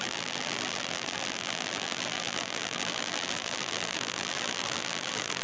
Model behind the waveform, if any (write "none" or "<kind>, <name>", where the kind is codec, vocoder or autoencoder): vocoder, BigVGAN v2